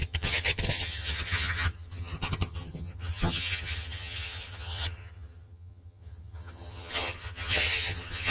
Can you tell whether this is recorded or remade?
remade